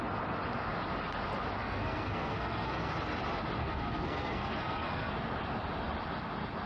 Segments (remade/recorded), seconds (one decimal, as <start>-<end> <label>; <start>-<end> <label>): 0.0-1.6 recorded; 1.6-2.9 remade; 2.9-3.6 recorded; 3.6-5.1 remade; 5.1-6.7 recorded